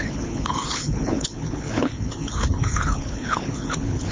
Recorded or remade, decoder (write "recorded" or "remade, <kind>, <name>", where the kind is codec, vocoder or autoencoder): remade, codec, HILCodec